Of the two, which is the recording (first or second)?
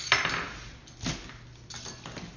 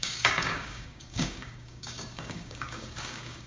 first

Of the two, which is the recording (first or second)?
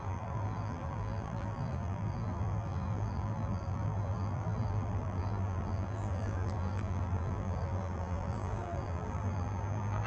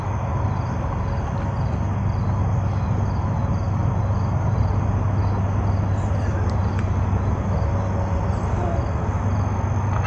second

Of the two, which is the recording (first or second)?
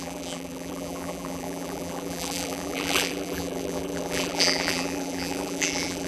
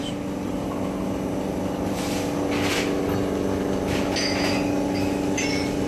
second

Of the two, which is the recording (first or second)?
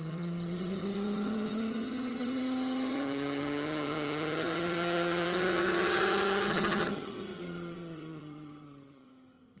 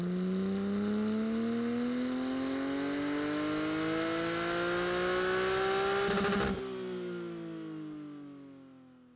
second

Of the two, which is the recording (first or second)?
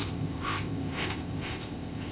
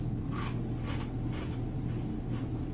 second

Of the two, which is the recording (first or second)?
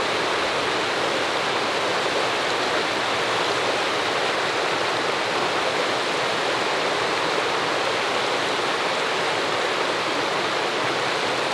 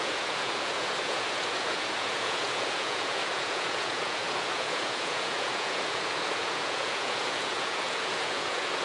first